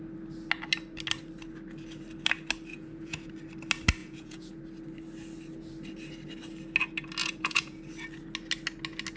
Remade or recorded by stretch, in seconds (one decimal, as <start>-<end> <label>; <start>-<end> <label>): 0.0-2.7 recorded; 2.7-3.3 remade; 3.3-4.0 recorded; 4.0-4.6 remade; 4.6-7.2 recorded; 7.2-7.8 remade; 7.8-9.2 recorded